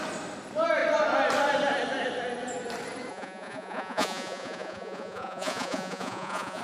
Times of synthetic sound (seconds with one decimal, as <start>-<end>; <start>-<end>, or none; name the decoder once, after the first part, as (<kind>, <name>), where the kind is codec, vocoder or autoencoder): 3.1-6.6 (vocoder, Vocos)

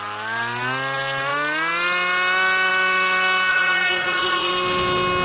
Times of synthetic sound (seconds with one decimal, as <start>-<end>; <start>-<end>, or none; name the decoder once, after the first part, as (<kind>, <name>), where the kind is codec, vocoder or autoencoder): 3.5-4.5 (vocoder, Vocos)

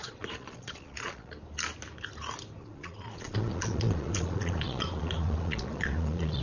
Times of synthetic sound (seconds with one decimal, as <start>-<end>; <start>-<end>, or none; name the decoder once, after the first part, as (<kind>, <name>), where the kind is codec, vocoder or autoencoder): 0.0-1.3 (vocoder, Vocos); 2.6-6.4

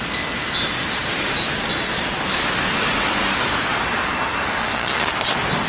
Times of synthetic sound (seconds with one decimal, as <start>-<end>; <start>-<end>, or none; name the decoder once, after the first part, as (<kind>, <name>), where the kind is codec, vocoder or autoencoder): 4.6-5.1 (vocoder, Vocos)

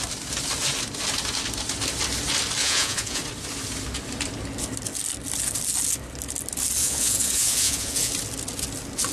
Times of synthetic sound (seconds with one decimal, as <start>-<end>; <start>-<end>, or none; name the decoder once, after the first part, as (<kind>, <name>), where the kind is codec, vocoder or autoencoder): 2.6-3.2 (vocoder, Vocos); 6.8-8.1

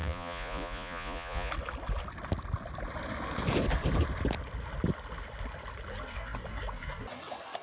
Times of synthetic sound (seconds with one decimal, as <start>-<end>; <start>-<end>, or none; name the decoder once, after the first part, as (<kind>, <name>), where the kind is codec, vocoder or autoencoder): 0.0-1.5 (vocoder, Vocos)